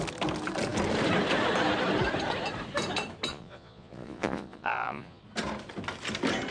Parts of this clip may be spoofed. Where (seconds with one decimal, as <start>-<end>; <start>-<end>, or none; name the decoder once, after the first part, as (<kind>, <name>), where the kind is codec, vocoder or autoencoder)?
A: 3.3-5.2 (vocoder, Vocos)